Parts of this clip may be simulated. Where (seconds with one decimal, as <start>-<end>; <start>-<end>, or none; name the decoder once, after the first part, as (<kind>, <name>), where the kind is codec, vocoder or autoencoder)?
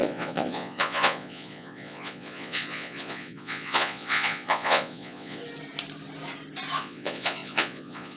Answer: 0.0-5.4 (vocoder, Vocos); 6.8-8.2